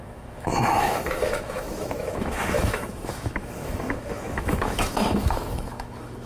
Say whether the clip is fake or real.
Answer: fake